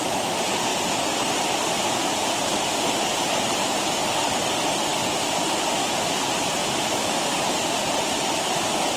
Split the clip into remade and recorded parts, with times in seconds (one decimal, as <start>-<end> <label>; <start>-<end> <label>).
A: 0.0-6.6 recorded; 6.6-7.3 remade; 7.3-9.0 recorded